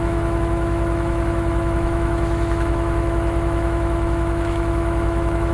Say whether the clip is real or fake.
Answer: fake